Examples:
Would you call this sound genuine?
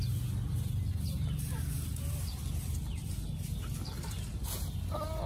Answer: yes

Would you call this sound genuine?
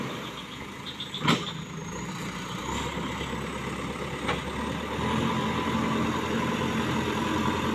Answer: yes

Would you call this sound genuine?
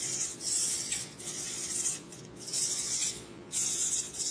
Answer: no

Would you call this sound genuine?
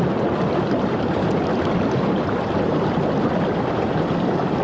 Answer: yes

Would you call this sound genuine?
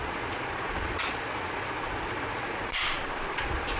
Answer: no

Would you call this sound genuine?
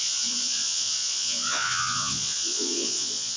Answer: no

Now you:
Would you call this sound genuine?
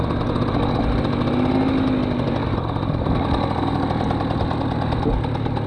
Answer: yes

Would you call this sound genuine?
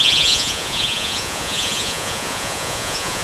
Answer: no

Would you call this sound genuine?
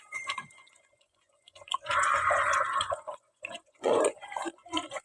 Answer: no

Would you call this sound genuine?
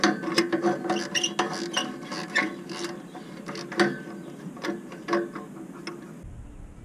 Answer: yes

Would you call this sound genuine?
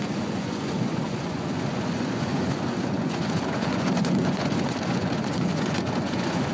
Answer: no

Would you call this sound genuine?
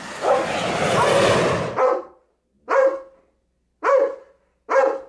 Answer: yes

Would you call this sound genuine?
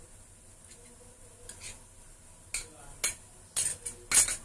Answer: yes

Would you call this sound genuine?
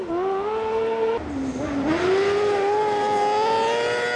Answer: yes